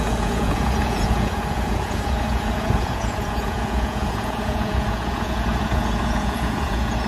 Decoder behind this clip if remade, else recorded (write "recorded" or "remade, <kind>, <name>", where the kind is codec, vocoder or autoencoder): remade, vocoder, Vocos